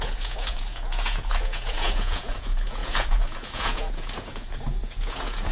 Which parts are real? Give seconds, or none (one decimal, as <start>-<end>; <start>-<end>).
none